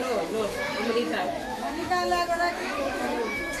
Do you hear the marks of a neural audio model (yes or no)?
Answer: yes